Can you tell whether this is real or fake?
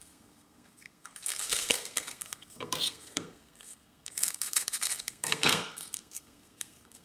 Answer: fake